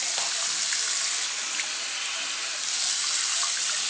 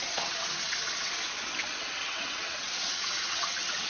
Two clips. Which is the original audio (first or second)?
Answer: first